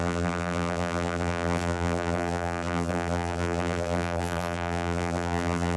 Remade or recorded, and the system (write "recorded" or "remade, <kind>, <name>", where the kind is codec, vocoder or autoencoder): remade, vocoder, BigVGAN v2